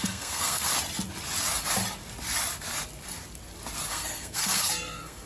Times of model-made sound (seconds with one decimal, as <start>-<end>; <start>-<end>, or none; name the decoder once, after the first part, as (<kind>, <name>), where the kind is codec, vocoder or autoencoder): 0.0-0.7 (codec, SNAC); 3.9-5.3